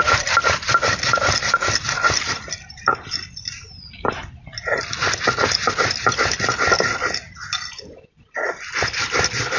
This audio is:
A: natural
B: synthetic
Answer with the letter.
A